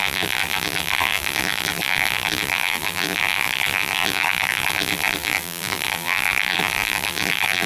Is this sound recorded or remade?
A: remade